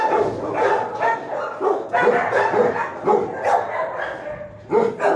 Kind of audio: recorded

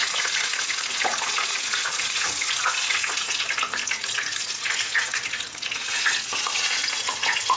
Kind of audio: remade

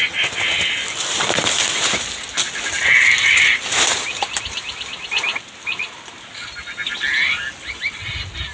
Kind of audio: recorded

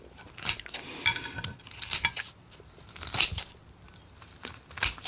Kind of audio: recorded